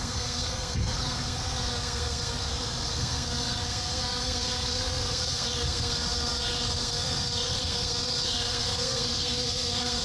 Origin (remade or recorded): remade